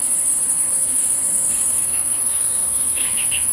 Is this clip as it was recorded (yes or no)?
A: no